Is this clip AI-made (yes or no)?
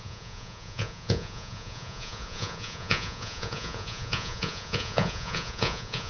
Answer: yes